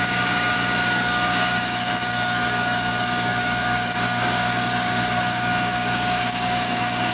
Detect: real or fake fake